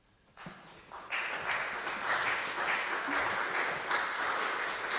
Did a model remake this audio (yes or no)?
no